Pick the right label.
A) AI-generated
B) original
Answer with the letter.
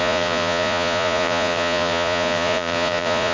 A